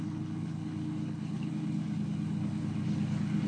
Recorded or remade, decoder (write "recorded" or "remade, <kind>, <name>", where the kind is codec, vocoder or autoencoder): remade, codec, HILCodec